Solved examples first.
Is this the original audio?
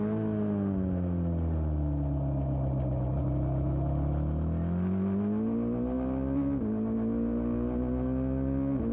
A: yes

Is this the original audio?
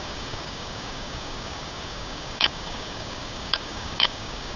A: no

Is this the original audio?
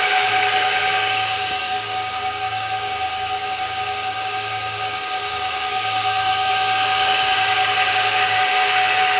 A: no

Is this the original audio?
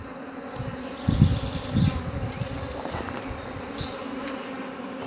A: yes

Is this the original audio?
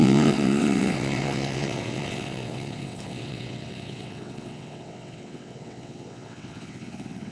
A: no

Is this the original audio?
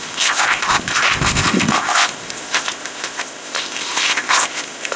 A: no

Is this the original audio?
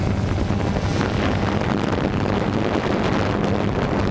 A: yes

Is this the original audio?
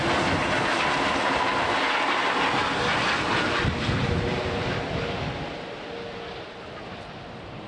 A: yes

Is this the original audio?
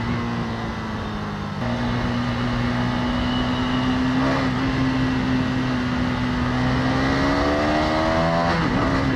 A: yes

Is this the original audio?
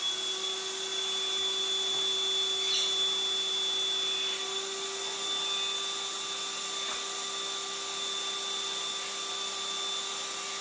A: yes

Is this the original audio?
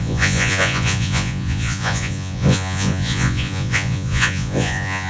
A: no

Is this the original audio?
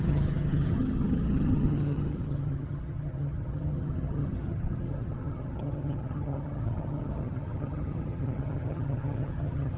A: no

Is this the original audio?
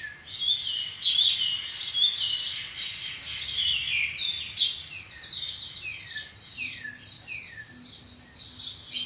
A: yes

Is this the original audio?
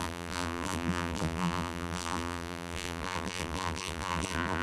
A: no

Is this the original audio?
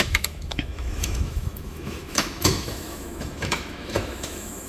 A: no